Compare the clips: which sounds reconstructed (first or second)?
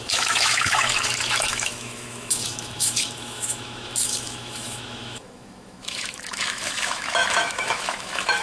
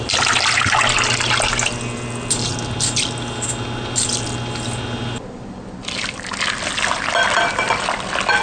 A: first